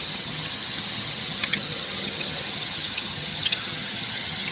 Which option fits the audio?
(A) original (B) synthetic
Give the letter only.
B